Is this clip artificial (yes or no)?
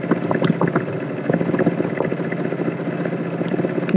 no